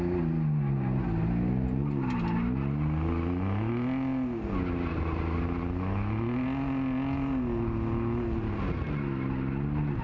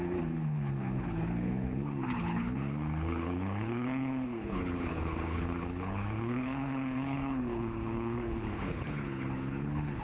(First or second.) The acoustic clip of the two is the first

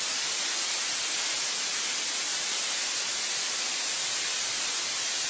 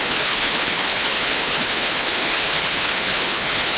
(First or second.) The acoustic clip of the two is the first